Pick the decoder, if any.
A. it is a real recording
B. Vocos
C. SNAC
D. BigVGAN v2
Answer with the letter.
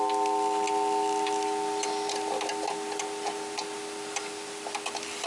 A